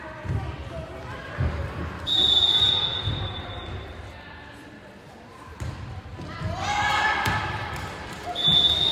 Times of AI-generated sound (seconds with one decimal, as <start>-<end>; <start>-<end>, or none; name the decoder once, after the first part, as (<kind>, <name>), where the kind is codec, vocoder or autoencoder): 0.0-8.9 (vocoder, BigVGAN v2)